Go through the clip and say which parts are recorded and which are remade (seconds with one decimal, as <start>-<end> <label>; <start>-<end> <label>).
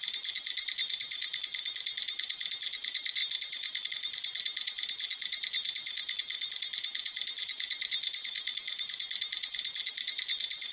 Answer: 0.0-10.7 recorded